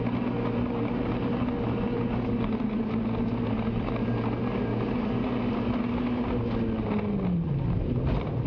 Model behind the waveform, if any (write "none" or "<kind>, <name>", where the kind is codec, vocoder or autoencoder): none